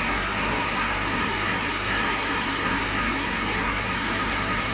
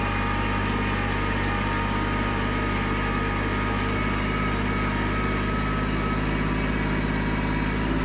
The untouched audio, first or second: second